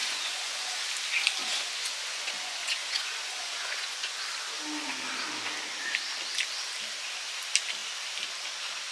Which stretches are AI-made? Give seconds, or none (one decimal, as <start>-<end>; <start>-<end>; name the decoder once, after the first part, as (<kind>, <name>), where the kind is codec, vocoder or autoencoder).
0.0-0.7 (vocoder, Vocos); 1.4-4.2